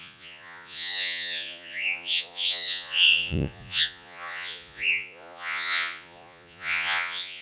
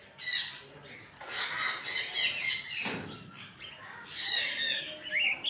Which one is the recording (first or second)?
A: second